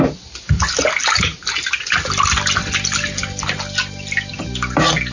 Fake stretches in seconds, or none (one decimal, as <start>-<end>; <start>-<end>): none